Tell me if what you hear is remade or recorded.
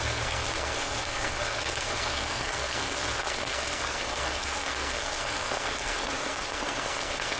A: remade